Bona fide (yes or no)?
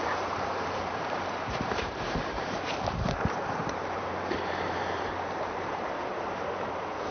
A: no